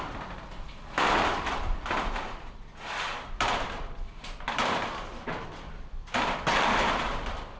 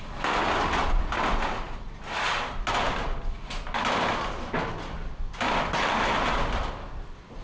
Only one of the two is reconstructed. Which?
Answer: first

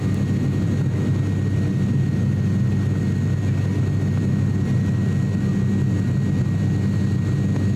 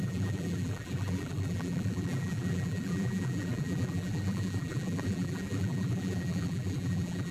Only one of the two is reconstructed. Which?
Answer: second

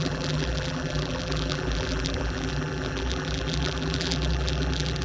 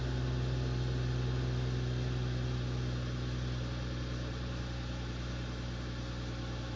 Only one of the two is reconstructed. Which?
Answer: first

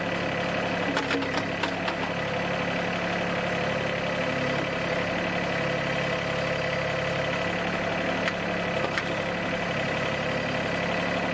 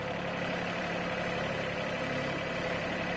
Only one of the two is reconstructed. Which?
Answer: second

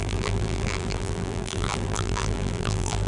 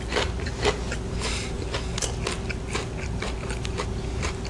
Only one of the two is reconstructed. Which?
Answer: first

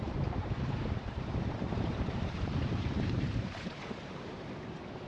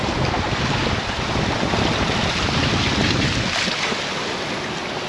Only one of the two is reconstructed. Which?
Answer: first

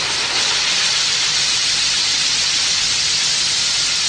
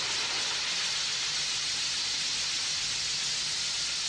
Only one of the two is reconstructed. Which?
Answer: first